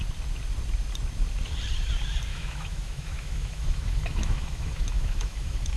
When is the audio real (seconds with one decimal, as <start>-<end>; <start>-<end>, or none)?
0.0-2.3